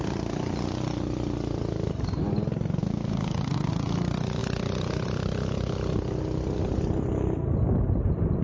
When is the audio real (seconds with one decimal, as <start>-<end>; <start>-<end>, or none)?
0.0-2.8; 3.7-8.4